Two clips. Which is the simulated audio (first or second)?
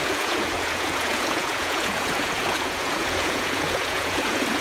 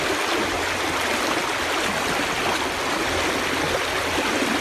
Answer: first